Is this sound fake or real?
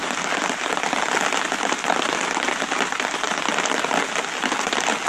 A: real